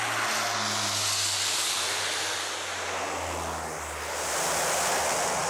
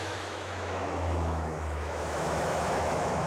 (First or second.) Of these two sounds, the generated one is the second